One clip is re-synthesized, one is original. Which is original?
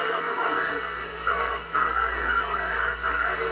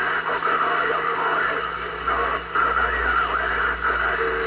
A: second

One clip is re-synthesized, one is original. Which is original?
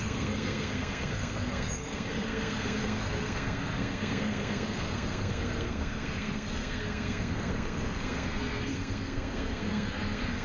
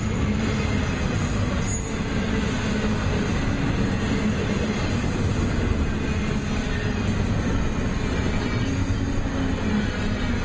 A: second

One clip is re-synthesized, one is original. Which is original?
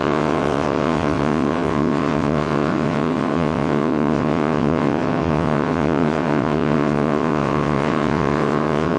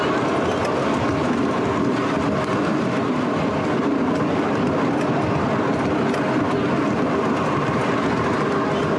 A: second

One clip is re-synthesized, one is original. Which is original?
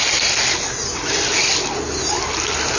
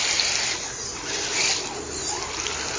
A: first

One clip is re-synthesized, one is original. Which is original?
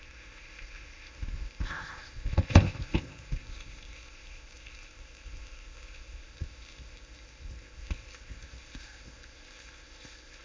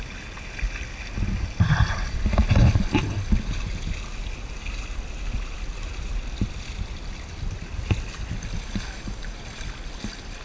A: second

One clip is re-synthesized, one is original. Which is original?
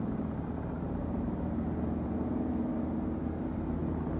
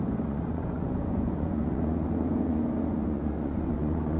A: first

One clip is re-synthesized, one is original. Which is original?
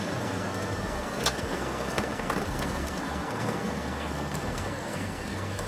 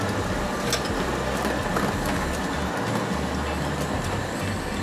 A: second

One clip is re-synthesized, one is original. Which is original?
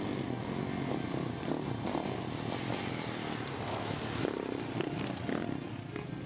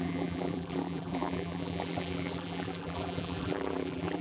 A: first